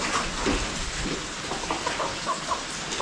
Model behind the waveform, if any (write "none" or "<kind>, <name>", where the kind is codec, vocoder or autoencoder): none